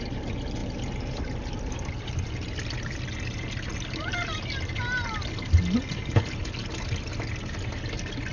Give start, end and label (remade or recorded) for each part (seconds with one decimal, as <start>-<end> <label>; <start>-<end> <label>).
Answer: 0.0-8.3 recorded